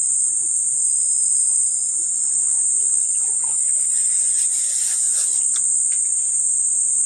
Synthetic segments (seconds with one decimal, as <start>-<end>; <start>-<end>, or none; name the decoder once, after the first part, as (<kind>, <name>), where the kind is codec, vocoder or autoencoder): 4.0-5.3 (vocoder, Vocos)